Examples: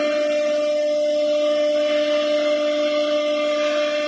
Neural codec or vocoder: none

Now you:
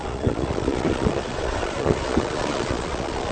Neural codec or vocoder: vocoder, Vocos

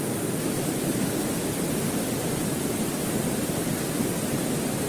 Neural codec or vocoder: none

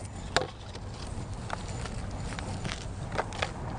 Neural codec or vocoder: none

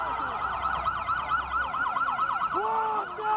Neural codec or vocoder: none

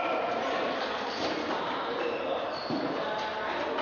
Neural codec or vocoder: none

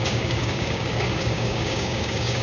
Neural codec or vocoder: codec, DAC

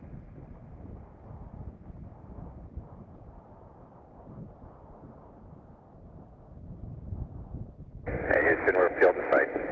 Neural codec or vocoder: none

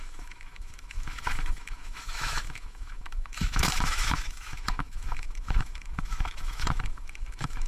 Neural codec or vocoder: autoencoder, DAC-VAE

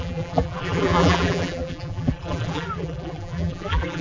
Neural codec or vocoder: vocoder, BigVGAN v2